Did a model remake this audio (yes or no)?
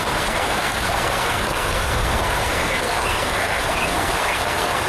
yes